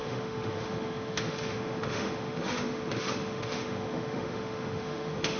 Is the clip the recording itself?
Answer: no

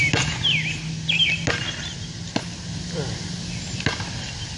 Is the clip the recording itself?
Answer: yes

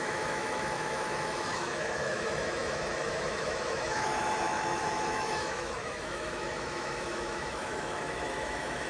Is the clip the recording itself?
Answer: no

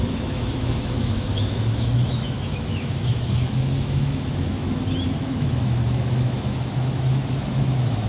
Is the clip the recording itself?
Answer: no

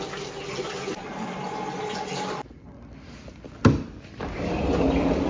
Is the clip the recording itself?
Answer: yes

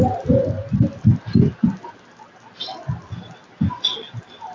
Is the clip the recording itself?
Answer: yes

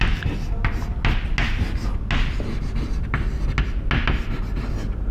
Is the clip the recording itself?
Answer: yes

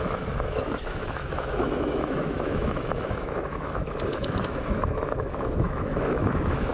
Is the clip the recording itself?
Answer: no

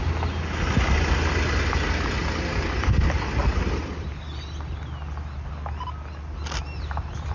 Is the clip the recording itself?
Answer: yes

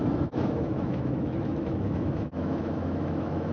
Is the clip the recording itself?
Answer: no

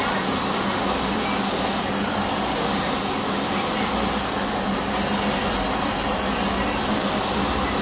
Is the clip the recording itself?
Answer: yes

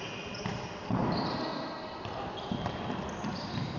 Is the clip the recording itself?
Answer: yes